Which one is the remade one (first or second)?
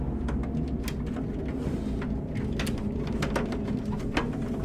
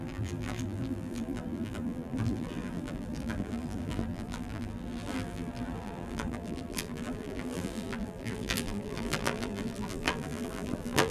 second